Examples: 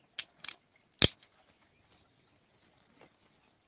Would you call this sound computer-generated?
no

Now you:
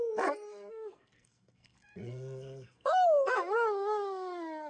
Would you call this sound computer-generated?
yes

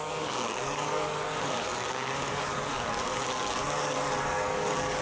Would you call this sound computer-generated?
yes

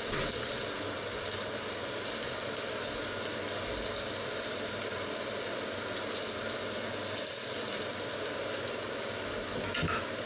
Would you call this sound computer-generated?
no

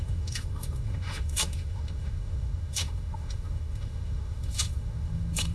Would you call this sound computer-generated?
yes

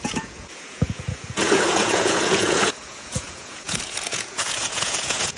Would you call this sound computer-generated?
yes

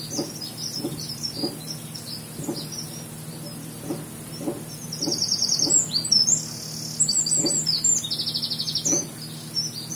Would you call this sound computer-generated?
no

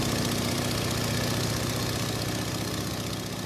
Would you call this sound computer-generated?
no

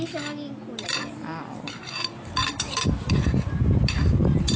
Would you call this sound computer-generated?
yes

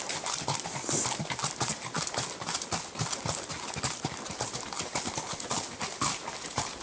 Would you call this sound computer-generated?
no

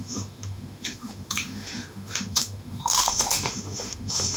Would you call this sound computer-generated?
yes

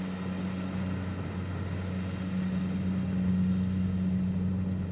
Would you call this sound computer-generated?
no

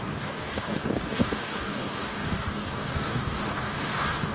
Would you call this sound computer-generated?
yes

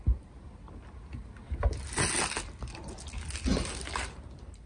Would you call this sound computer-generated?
no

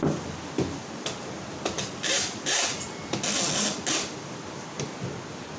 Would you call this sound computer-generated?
no